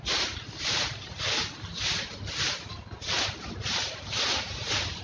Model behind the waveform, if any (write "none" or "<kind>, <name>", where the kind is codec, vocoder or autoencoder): none